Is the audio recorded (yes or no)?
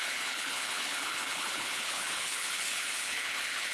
no